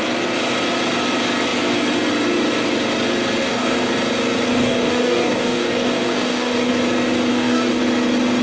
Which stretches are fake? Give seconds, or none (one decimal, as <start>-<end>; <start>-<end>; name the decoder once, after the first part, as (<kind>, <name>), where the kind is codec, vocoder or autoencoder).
3.4-3.9 (codec, DAC); 4.5-6.7; 7.3-7.8